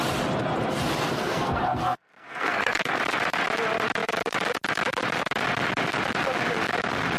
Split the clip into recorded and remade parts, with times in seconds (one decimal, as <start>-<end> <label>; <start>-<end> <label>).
0.0-1.2 recorded; 1.2-3.0 remade; 3.0-7.2 recorded